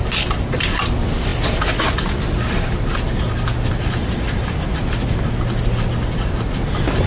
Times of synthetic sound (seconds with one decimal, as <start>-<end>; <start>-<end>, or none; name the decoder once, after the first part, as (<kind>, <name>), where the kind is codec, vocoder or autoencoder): none